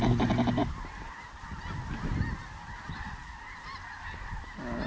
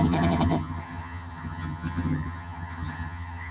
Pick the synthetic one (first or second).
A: second